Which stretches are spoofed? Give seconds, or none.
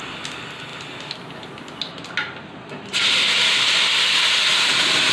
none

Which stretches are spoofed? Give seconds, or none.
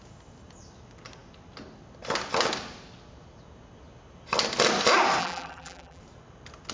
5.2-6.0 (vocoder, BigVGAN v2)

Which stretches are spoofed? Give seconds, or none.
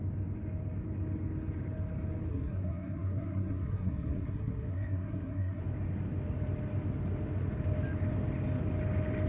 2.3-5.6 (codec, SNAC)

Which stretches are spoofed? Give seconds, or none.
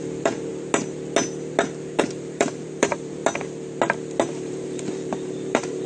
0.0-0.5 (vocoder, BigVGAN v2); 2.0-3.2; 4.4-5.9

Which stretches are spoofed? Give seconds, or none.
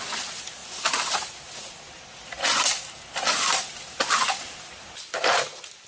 none